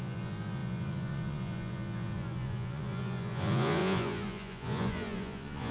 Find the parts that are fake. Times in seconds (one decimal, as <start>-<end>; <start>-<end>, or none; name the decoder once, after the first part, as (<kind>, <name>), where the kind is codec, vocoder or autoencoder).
0.0-5.7 (vocoder, Vocos)